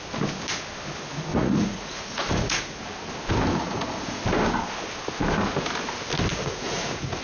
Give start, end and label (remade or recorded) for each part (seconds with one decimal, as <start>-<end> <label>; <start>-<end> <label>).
0.0-1.3 recorded; 1.3-2.8 remade; 2.8-3.6 recorded; 3.6-4.2 remade; 4.2-6.3 recorded; 6.3-7.2 remade